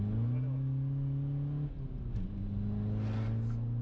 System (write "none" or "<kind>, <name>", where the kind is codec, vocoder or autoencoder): none